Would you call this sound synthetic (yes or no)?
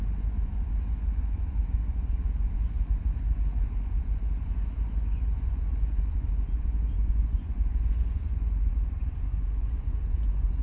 yes